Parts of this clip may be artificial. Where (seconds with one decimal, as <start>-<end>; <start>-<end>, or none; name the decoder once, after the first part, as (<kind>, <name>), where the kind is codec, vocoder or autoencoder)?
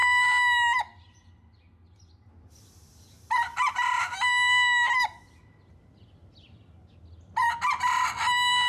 none